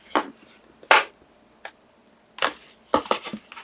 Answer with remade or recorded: recorded